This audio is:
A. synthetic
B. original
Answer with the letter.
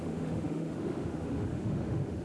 A